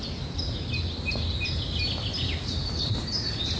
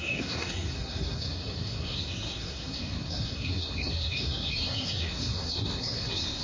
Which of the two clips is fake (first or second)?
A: second